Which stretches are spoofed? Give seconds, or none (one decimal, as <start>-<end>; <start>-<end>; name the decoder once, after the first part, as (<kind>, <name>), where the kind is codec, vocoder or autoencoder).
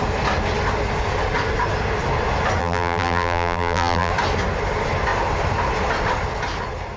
2.6-4.1 (vocoder, BigVGAN v2)